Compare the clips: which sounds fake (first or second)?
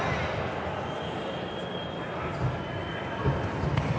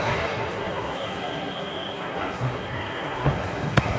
second